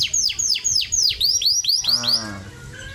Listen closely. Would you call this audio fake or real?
real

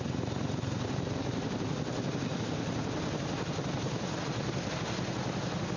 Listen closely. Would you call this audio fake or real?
real